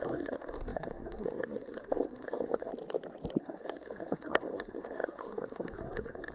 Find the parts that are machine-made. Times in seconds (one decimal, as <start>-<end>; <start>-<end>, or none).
0.0-2.7; 3.4-6.3